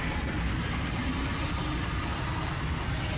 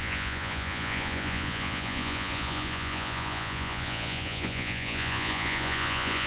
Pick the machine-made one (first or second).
second